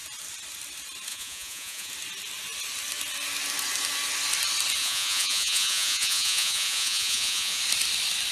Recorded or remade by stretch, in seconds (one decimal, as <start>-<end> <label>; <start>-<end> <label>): 0.0-1.1 recorded; 1.1-1.9 remade; 1.9-4.8 recorded; 4.8-7.6 remade; 7.6-8.3 recorded